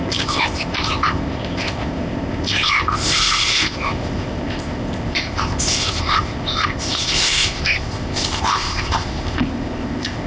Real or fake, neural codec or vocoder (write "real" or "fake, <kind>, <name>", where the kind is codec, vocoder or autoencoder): fake, codec, ZipCodec